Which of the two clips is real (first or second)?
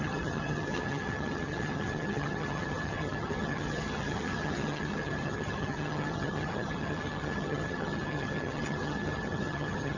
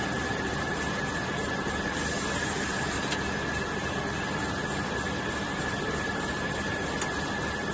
second